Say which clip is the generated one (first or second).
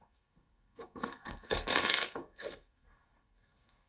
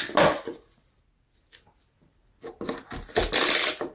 first